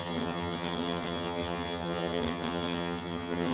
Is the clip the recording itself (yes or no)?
no